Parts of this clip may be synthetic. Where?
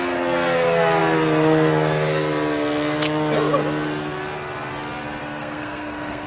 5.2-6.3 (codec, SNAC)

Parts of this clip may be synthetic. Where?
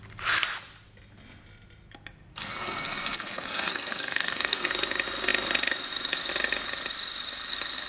2.3-4.7 (codec, SNAC)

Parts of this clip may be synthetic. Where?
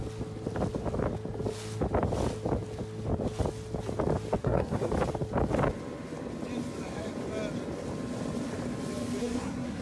4.4-4.9 (codec, SNAC); 9.2-9.8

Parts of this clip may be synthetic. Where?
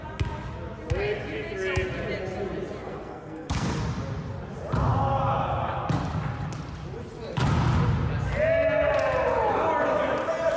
2.8-3.8 (codec, SNAC)